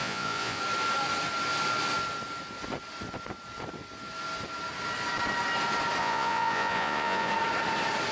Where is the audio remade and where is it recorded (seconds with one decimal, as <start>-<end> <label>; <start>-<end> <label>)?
0.0-0.6 remade; 0.6-6.0 recorded; 6.0-7.3 remade; 7.3-8.1 recorded